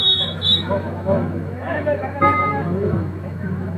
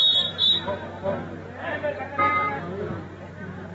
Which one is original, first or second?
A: second